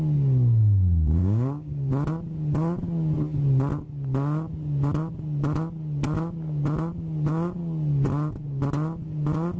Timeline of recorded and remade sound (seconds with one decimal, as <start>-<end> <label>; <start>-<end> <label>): 0.0-1.2 recorded; 1.2-1.9 remade; 1.9-9.6 recorded